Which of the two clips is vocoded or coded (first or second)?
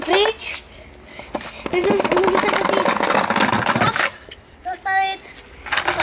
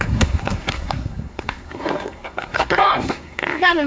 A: second